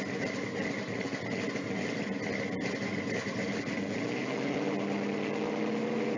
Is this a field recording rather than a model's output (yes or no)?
yes